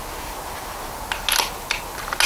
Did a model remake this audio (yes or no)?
no